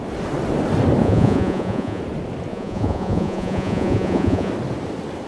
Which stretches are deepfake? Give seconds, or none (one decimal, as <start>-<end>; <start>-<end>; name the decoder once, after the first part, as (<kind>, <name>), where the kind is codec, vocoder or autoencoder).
1.0-2.0 (vocoder, Vocos); 2.5-4.5